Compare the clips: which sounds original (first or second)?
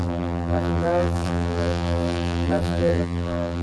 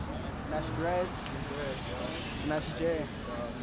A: second